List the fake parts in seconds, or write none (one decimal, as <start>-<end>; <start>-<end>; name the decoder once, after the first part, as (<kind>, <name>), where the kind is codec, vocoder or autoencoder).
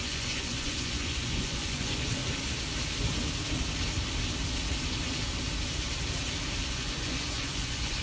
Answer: 0.0-2.2 (vocoder, Vocos); 6.7-8.0